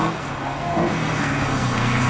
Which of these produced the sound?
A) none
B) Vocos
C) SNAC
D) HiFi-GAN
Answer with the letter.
C